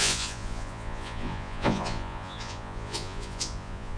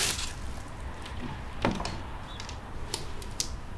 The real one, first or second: second